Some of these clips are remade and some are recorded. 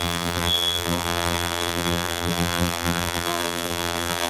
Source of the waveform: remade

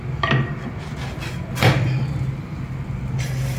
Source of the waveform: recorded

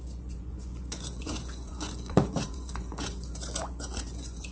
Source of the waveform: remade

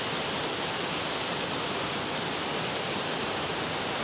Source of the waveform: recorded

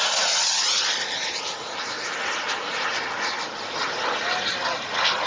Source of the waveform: recorded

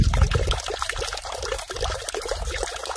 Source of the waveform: recorded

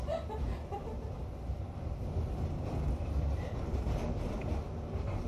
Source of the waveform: remade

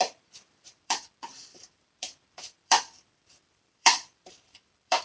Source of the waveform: remade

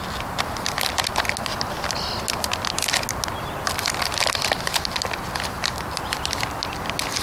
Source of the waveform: recorded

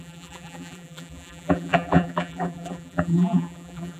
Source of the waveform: remade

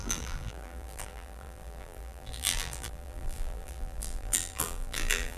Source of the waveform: remade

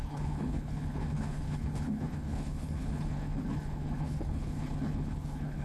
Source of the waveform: remade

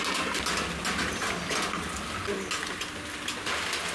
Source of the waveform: recorded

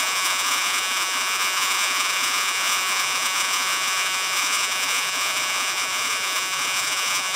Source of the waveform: remade